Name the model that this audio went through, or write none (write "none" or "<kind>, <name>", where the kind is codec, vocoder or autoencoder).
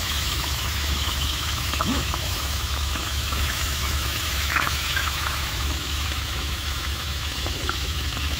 autoencoder, DAC-VAE